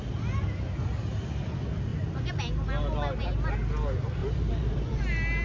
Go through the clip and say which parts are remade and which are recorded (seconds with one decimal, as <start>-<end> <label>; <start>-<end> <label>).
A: 0.0-4.2 recorded; 4.2-5.0 remade; 5.0-5.4 recorded